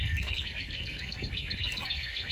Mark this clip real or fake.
fake